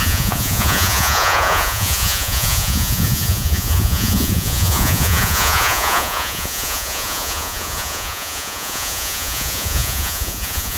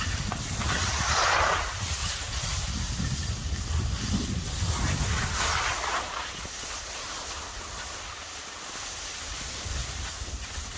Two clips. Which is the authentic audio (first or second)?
second